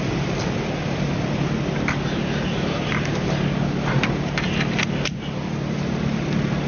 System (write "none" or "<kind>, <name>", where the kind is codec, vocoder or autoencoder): none